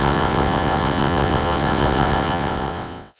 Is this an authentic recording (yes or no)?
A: no